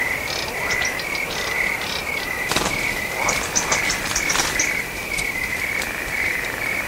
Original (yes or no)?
no